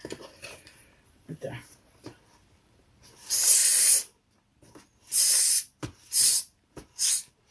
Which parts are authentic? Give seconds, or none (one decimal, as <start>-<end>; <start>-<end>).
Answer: 3.6-5.8